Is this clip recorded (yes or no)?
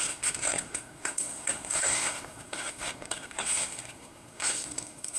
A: no